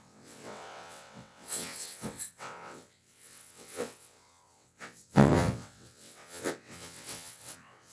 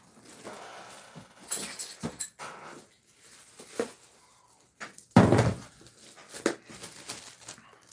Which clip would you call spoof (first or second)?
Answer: first